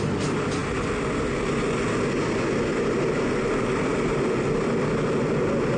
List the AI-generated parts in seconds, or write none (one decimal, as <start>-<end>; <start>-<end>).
none